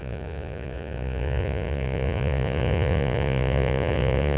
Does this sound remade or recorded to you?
remade